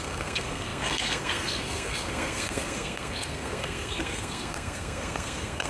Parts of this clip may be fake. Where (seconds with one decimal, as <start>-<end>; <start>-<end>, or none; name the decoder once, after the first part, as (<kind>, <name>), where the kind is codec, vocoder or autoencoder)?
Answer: 0.0-5.7 (codec, SNAC)